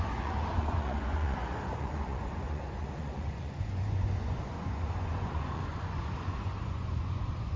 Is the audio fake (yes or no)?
yes